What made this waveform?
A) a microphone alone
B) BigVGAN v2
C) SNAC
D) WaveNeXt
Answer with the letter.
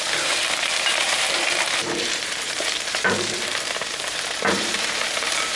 B